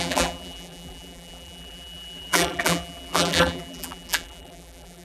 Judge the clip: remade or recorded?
remade